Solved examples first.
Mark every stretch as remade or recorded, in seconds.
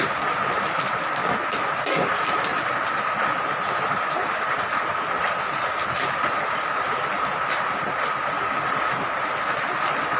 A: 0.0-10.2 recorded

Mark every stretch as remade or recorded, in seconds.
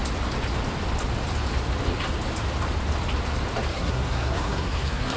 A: 0.0-3.7 recorded; 3.7-5.2 remade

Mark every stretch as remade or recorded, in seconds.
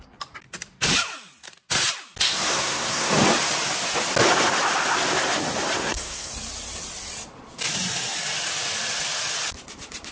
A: 0.0-2.5 recorded; 2.5-3.1 remade; 3.1-5.8 recorded; 5.8-6.3 remade; 6.3-10.1 recorded